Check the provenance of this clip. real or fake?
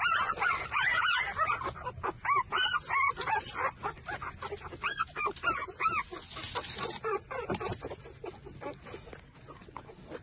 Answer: real